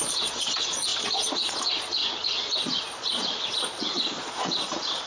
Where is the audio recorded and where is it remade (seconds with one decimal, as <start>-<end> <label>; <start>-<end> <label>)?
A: 0.0-5.1 remade